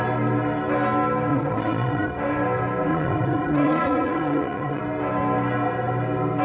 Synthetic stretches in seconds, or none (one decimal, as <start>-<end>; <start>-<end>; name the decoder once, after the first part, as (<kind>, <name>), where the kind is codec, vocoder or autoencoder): 1.3-2.1 (vocoder, Vocos); 2.9-4.8